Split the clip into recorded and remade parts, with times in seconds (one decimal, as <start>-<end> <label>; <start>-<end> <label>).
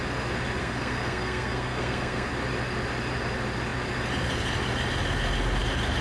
0.0-0.6 recorded; 0.6-2.3 remade; 2.3-6.0 recorded